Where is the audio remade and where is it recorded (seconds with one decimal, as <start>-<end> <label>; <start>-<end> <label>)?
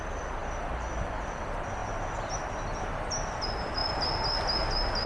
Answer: 0.0-5.1 recorded